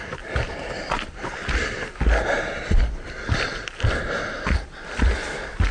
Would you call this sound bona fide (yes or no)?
yes